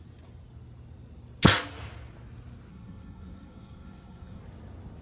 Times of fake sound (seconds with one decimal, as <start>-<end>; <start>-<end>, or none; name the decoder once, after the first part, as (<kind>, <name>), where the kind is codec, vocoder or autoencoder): 2.7-4.4 (codec, SNAC)